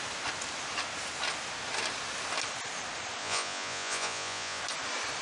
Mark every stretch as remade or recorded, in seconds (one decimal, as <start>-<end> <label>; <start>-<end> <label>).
0.0-3.2 recorded; 3.2-4.6 remade; 4.6-5.2 recorded